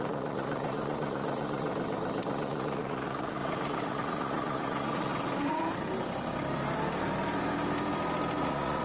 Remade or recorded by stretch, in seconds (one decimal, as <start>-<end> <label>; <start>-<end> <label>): 0.0-1.7 remade; 1.7-2.3 recorded; 2.3-5.1 remade; 5.1-8.4 recorded; 8.4-8.8 remade